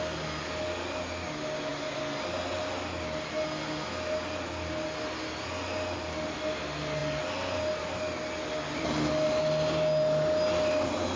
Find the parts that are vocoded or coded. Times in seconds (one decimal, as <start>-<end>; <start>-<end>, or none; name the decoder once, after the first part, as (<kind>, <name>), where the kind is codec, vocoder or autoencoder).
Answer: none